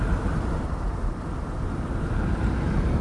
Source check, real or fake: fake